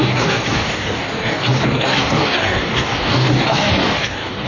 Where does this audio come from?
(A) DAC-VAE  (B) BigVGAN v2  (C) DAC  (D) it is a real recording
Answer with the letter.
C